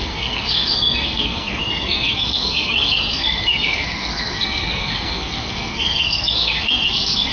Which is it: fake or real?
fake